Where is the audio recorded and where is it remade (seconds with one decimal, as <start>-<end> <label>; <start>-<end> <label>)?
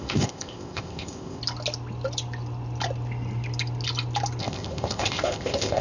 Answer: 0.0-1.4 remade; 1.4-4.4 recorded; 4.4-5.8 remade